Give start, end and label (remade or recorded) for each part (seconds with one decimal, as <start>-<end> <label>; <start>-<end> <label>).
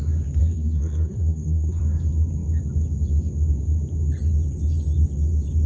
0.0-0.4 recorded; 0.4-1.8 remade; 1.8-5.7 recorded